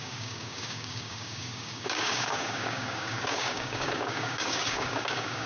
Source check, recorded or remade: remade